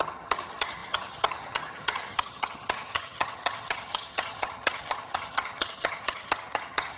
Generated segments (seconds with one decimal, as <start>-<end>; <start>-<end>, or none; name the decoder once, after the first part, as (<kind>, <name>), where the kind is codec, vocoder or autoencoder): 0.0-7.0 (vocoder, HiFi-GAN)